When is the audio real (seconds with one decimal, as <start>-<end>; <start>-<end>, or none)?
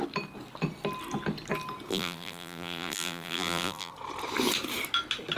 0.0-1.9; 3.9-5.4